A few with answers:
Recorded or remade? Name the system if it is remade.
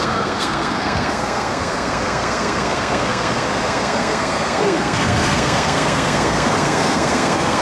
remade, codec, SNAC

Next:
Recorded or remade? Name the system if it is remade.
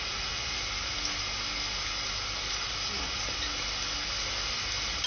recorded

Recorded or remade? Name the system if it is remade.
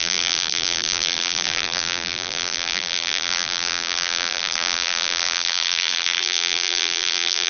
remade, vocoder, BigVGAN v2